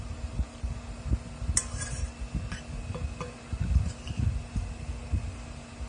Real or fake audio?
real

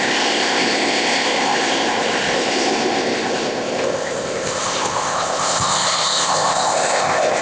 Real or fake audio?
fake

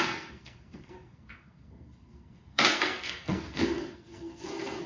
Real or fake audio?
fake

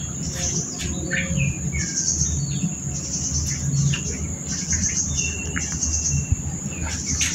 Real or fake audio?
real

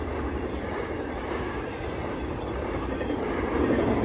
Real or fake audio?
real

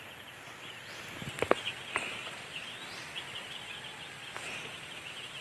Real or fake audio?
real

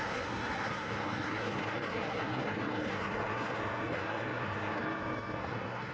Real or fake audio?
fake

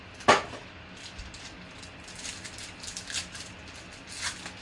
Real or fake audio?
real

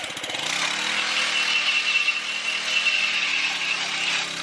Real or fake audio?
real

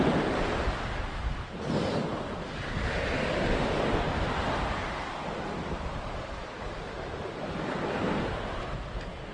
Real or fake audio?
real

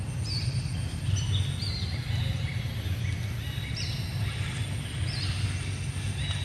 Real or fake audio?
real